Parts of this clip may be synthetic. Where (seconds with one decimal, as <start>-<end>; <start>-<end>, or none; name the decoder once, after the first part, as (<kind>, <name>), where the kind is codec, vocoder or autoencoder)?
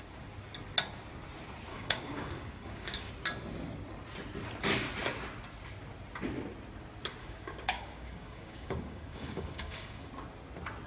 1.7-3.1 (codec, DAC); 7.2-10.1